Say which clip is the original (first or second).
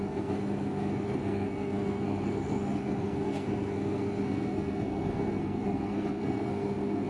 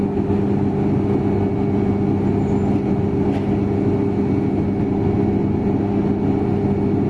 second